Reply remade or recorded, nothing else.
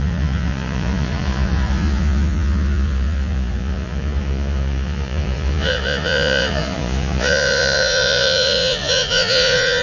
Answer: remade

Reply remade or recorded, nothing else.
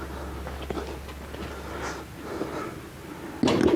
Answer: recorded